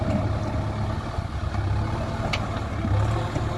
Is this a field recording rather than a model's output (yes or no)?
yes